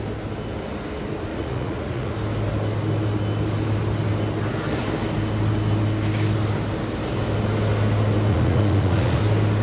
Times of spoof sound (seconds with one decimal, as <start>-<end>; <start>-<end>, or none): 1.3-2.1; 8.3-9.2